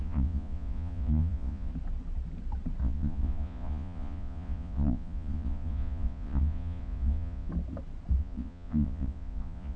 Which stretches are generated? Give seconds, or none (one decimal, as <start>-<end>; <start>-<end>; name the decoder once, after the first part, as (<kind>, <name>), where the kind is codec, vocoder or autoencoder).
0.0-1.7 (vocoder, Vocos); 2.8-7.5; 8.2-9.8